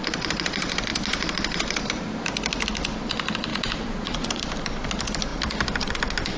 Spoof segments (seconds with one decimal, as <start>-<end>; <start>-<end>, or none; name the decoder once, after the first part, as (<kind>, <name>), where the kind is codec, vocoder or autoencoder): 3.5-4.4 (vocoder, Vocos)